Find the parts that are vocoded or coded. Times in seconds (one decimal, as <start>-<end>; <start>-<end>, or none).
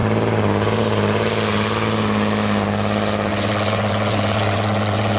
3.3-5.2